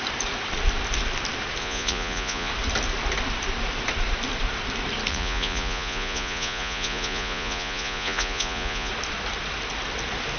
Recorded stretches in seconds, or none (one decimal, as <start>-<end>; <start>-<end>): 0.0-1.6; 2.5-5.1; 8.9-10.4

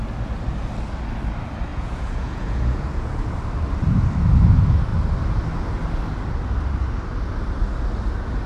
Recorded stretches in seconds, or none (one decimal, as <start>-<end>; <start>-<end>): 0.0-1.7; 3.1-8.5

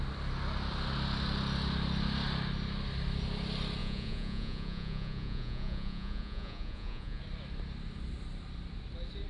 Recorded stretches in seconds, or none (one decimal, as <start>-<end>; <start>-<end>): 0.0-3.8; 7.2-9.3

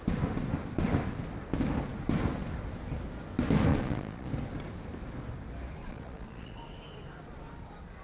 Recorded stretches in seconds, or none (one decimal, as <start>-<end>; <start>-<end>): 0.0-3.7; 4.3-5.8; 6.6-8.0

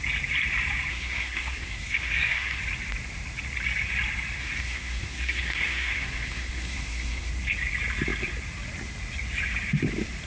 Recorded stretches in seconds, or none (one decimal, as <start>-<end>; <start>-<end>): 0.0-0.9; 2.6-4.4; 7.3-10.3